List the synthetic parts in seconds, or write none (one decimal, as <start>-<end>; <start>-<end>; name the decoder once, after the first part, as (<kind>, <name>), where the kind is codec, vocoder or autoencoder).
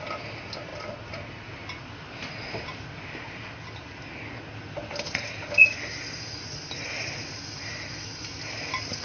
none